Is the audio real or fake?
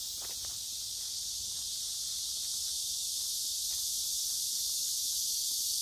real